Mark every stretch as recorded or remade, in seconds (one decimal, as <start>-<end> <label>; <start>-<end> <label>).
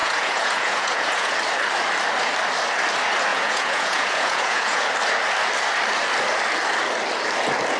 0.0-1.3 remade; 1.3-3.3 recorded; 3.3-4.8 remade; 4.8-7.8 recorded